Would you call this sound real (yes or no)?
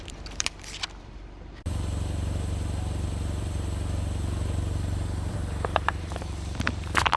no